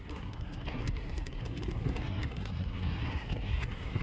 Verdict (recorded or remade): remade